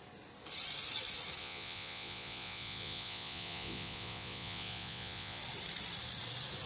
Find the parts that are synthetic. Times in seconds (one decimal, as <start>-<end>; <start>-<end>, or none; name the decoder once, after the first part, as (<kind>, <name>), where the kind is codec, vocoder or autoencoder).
1.4-5.4 (vocoder, Vocos)